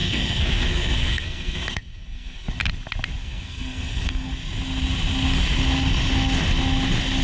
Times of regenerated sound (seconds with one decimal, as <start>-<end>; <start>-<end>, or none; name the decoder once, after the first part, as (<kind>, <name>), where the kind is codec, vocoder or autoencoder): 0.0-2.5 (codec, SNAC); 3.2-4.3